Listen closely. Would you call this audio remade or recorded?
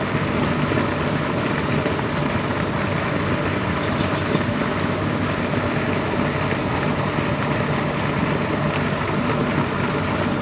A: recorded